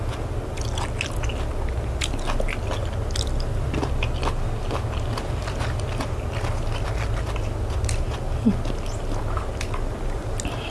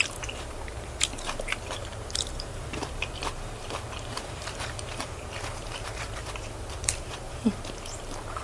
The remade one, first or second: second